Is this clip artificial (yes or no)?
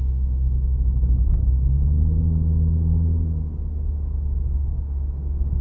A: no